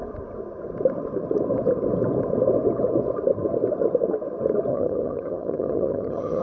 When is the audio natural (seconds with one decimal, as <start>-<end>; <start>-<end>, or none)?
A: 0.0-4.7